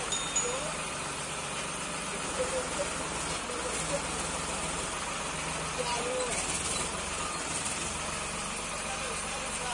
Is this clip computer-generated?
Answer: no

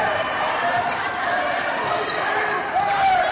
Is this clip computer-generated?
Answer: no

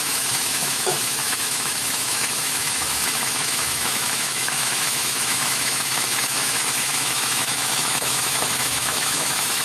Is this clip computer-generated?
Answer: yes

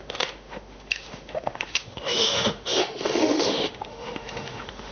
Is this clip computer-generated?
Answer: yes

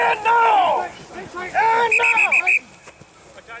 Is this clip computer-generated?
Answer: no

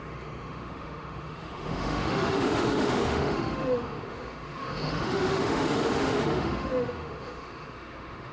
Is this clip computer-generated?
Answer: yes